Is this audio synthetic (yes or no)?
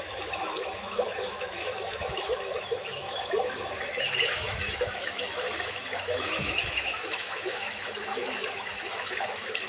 yes